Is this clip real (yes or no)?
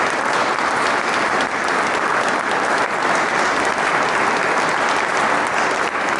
yes